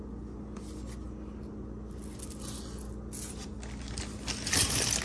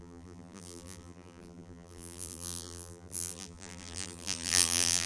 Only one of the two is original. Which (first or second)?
first